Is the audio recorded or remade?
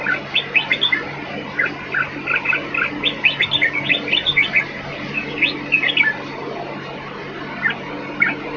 recorded